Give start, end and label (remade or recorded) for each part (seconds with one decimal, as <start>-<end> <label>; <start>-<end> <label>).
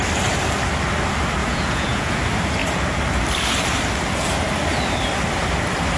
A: 0.0-1.4 recorded; 1.4-2.2 remade; 2.2-6.0 recorded